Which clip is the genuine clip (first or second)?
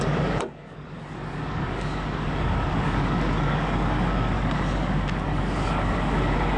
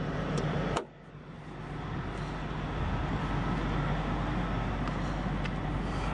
second